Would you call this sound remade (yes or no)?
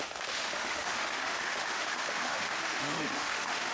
yes